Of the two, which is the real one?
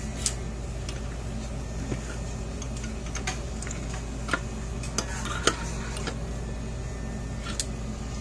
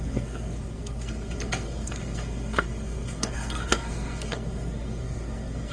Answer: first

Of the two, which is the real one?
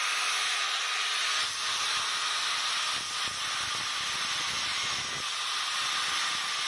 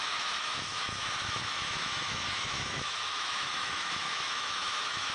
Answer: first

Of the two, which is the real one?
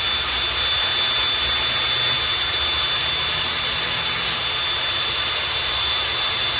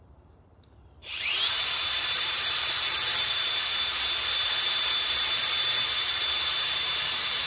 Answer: first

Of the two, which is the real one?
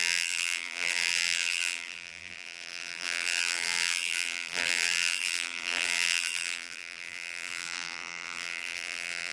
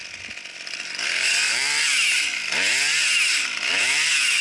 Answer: second